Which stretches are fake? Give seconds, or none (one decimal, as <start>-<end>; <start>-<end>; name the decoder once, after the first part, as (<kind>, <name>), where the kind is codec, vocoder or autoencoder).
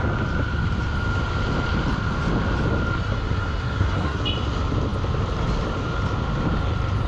3.0-4.2 (codec, SNAC)